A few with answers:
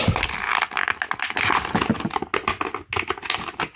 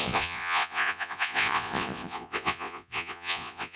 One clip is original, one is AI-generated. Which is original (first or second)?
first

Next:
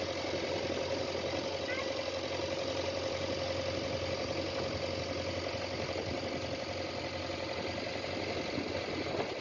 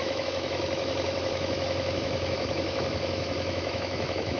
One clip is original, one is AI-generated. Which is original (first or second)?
first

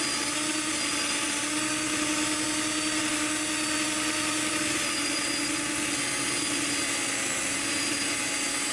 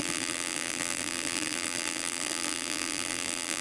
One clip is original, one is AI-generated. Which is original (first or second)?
first